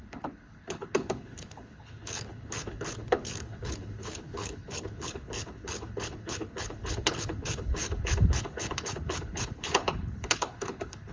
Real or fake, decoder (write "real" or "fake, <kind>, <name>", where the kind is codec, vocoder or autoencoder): fake, codec, HILCodec